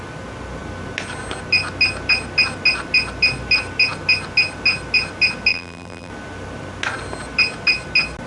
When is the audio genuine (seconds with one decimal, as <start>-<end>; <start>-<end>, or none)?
0.0-5.5; 6.1-8.3